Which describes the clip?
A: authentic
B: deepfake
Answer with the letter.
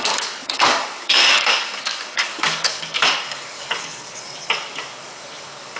B